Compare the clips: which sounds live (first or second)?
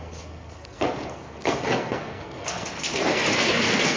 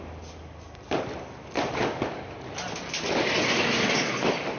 second